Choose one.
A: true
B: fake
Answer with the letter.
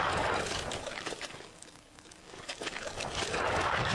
B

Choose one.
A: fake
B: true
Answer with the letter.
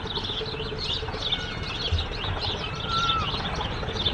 B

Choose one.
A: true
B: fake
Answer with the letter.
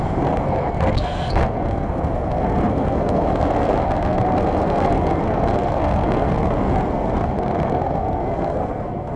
B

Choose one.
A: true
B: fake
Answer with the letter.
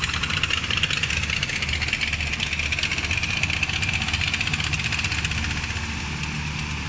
A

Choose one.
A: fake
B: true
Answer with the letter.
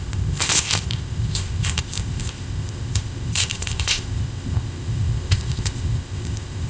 A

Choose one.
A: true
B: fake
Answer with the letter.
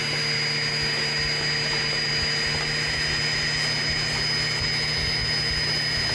A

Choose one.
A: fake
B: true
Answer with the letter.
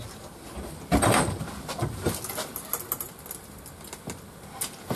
B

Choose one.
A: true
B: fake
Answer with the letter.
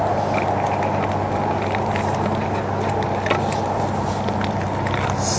A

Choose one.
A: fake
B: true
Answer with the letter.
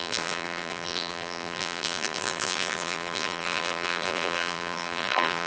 A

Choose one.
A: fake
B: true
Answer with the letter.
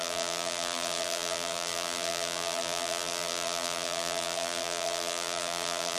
A